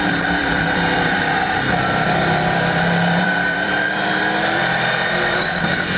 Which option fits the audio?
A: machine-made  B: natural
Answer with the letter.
A